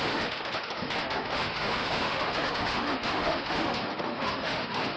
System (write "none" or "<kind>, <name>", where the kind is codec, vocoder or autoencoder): autoencoder, DAC-VAE